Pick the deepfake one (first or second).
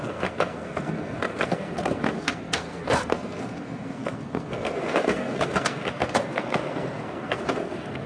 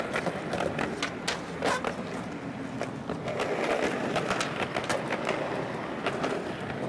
first